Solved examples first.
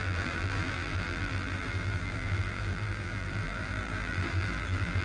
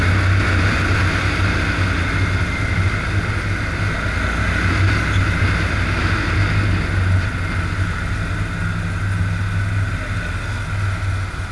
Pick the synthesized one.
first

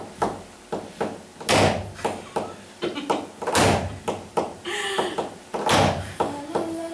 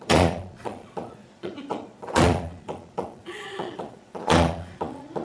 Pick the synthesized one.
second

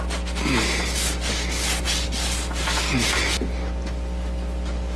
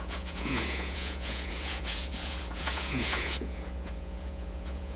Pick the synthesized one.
second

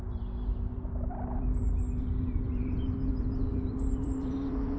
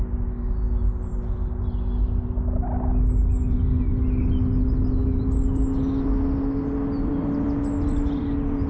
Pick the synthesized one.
first